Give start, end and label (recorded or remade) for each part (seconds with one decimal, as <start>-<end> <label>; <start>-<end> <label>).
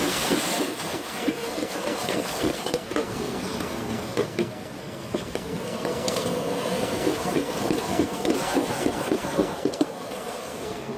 0.0-11.0 remade